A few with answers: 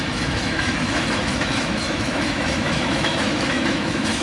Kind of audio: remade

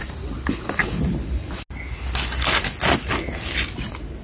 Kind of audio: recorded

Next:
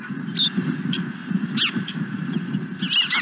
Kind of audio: recorded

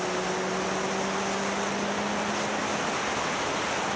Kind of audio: recorded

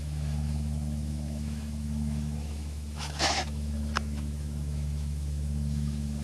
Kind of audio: remade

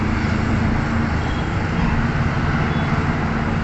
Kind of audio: recorded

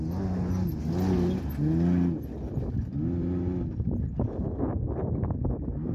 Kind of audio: recorded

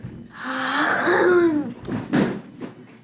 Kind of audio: recorded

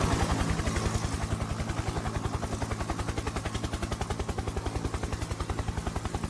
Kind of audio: recorded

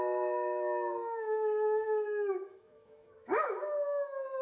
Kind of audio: remade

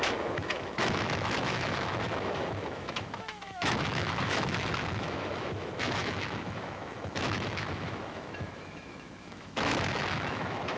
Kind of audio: remade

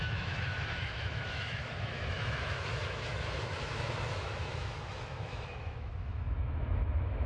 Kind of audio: remade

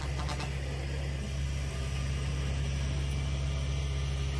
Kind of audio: recorded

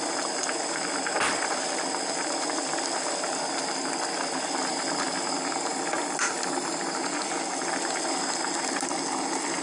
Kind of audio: recorded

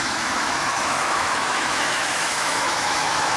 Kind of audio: remade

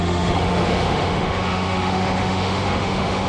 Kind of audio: remade